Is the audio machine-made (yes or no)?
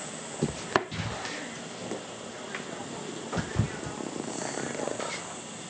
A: no